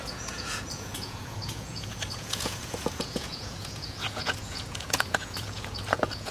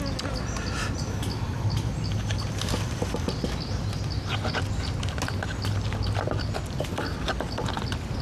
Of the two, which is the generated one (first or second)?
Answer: first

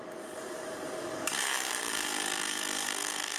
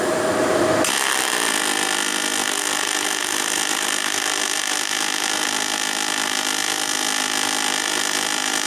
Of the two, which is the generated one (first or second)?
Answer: first